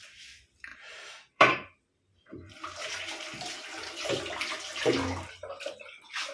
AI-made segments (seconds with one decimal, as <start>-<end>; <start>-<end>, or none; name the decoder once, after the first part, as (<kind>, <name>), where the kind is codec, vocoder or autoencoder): 0.7-4.5 (vocoder, BigVGAN v2)